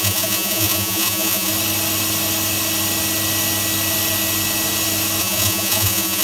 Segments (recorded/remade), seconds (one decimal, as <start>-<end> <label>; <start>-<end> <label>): 0.0-1.5 remade; 1.5-5.2 recorded; 5.2-6.2 remade